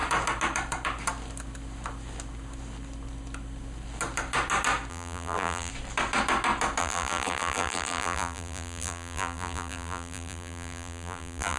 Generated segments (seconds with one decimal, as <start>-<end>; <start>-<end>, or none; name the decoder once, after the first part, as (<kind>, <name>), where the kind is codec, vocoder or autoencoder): 4.9-5.7 (vocoder, BigVGAN v2); 6.8-11.6